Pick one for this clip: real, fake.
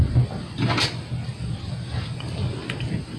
real